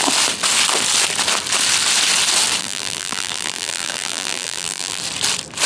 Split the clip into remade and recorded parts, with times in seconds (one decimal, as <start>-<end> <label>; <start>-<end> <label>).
0.0-2.6 recorded; 2.6-5.0 remade; 5.0-5.7 recorded